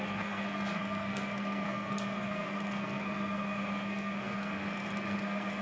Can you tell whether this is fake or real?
fake